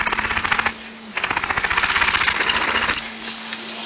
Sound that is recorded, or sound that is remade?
recorded